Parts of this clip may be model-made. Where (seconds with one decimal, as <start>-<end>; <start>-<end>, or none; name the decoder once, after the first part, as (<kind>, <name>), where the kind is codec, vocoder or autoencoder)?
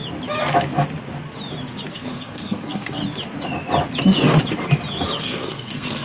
1.9-3.0 (codec, SNAC); 5.2-6.0